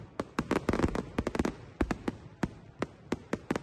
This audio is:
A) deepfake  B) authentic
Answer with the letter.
B